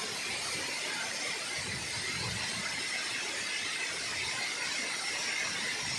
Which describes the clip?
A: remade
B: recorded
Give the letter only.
B